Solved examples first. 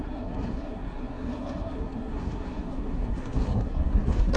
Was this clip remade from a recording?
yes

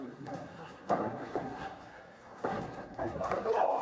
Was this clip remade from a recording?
yes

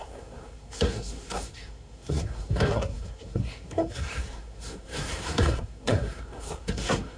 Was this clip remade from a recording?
yes